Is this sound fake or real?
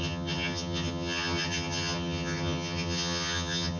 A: fake